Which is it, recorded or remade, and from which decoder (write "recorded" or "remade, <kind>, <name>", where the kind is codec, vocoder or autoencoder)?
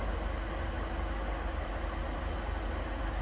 recorded